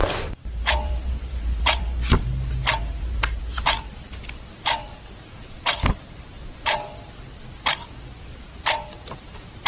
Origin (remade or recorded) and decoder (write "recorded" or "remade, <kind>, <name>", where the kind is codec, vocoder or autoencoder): remade, vocoder, BigVGAN v2